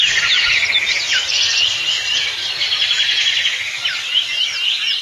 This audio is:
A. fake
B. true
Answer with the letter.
A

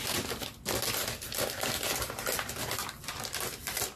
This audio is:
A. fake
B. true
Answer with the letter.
B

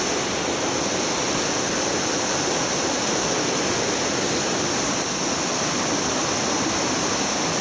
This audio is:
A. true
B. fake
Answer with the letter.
A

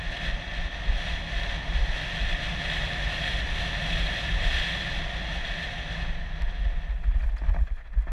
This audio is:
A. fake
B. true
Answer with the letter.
B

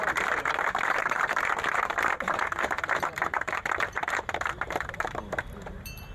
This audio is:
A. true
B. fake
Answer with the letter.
B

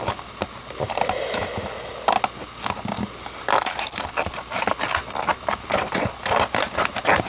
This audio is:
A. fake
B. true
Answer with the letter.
B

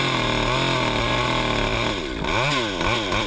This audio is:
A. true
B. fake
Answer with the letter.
A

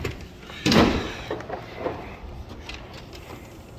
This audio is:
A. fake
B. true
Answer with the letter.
B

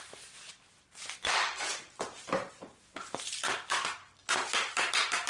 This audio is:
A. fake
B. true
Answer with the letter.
B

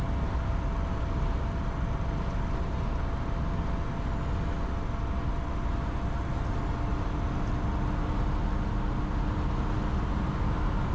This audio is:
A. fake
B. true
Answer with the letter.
B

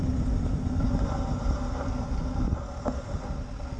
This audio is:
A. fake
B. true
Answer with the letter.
B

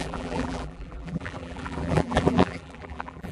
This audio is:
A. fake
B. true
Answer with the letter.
A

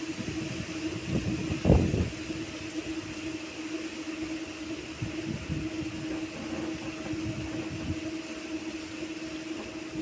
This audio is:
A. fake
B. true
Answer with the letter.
B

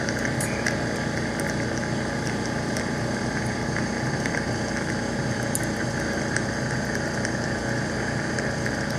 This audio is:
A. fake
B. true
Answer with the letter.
B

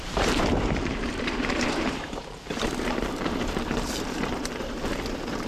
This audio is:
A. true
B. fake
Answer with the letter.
B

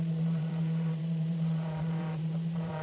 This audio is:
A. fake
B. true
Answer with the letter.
A